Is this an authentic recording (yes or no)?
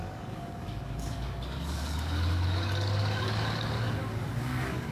no